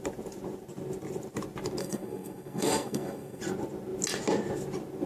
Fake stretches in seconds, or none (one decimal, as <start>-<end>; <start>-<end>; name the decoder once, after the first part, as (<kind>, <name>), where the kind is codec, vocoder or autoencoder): 1.8-3.4 (codec, SNAC)